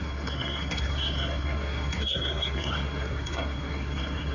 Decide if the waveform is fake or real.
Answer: fake